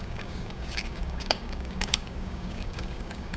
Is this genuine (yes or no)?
no